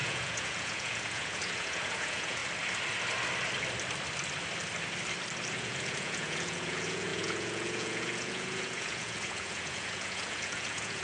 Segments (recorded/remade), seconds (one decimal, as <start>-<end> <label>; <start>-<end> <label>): 0.0-2.4 remade; 2.4-5.5 recorded; 5.5-11.0 remade

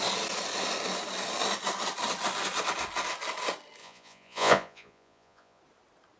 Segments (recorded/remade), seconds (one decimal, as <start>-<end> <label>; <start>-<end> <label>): 0.0-3.8 recorded; 3.8-5.6 remade; 5.6-6.2 recorded